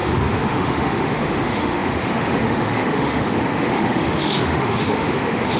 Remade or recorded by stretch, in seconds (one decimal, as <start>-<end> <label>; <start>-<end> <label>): 0.0-5.6 remade